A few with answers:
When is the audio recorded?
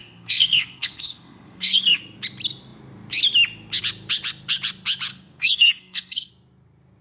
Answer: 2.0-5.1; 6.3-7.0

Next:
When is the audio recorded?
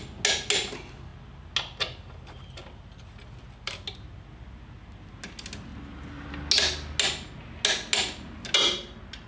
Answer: 0.0-9.3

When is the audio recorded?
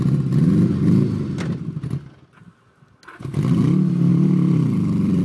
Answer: 0.0-4.1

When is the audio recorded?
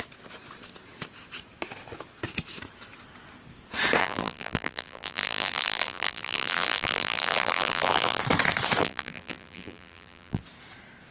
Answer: 0.0-4.0; 8.2-8.8; 10.4-11.1